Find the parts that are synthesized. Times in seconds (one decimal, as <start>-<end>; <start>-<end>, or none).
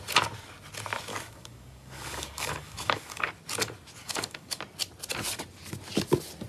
1.1-3.3; 4.0-4.6